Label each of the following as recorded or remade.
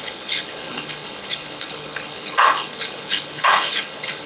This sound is remade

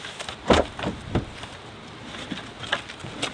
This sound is recorded